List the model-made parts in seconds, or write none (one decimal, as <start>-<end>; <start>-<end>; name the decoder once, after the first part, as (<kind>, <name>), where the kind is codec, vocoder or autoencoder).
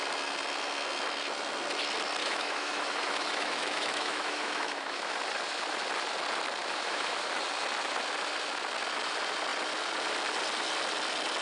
2.2-5.2 (autoencoder, DAC-VAE); 6.6-7.3